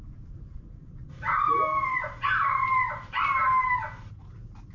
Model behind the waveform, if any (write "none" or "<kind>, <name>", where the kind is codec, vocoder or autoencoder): vocoder, BigVGAN v2